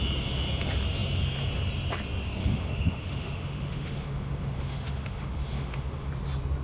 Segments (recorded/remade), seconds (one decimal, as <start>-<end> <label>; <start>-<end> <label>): 0.0-2.4 recorded; 2.4-6.1 remade; 6.1-6.6 recorded